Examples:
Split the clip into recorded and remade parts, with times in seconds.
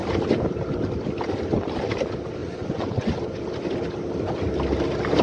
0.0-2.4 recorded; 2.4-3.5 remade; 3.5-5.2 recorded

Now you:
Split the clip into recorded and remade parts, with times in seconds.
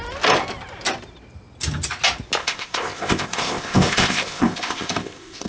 0.0-2.4 recorded; 2.4-5.5 remade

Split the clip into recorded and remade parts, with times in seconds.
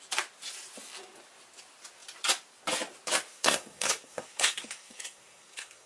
0.0-3.3 recorded; 3.3-5.9 remade